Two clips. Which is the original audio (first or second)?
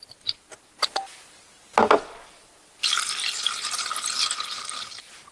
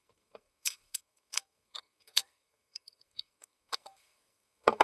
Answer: first